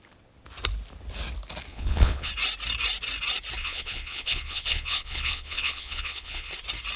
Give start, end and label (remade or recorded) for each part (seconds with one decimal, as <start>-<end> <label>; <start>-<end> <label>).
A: 0.0-1.7 recorded; 1.7-2.3 remade; 2.3-3.6 recorded; 3.6-6.5 remade; 6.5-7.0 recorded